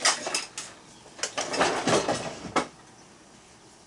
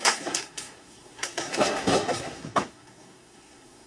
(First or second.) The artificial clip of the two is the second